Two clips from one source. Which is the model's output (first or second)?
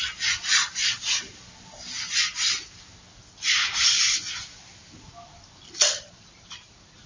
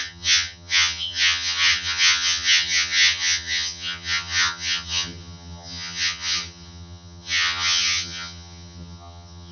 second